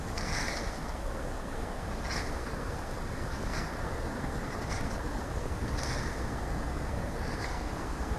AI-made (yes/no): yes